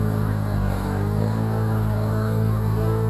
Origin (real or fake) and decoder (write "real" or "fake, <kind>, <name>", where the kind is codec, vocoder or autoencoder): fake, codec, DAC